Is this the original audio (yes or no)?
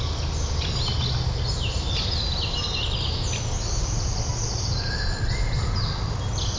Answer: yes